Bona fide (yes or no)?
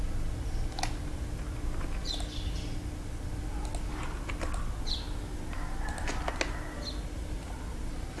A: yes